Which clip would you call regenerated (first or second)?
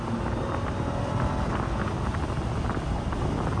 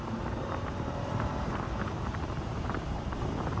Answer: second